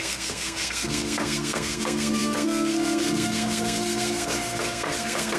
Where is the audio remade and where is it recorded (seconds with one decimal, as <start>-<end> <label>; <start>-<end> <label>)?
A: 0.0-5.4 remade